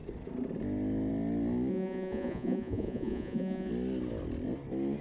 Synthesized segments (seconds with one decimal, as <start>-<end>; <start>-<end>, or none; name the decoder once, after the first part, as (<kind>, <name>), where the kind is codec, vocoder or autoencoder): 1.7-3.7 (vocoder, Vocos)